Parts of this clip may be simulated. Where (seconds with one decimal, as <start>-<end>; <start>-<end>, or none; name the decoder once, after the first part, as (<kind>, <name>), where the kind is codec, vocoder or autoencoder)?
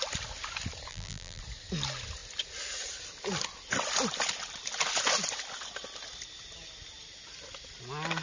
0.9-1.4 (vocoder, BigVGAN v2)